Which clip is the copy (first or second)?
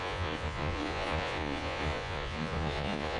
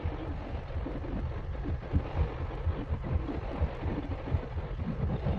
first